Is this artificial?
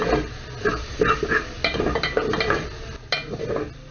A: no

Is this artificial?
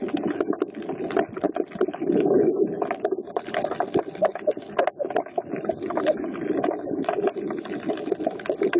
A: no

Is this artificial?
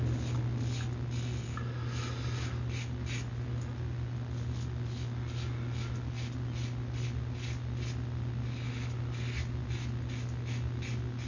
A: no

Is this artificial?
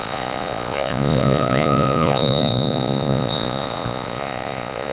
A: yes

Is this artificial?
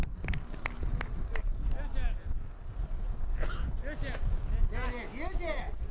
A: no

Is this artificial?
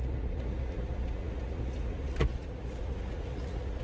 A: yes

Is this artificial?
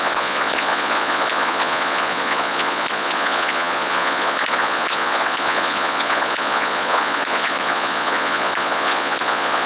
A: yes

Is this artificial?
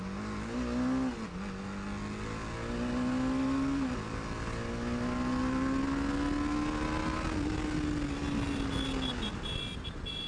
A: no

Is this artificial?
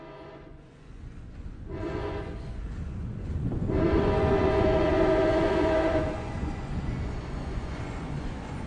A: yes